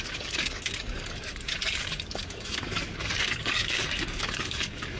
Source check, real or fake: fake